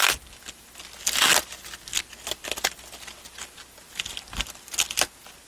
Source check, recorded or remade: recorded